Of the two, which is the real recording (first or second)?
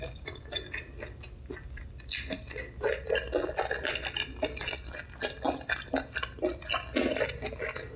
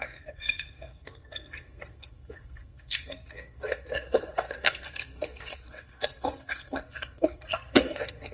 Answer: first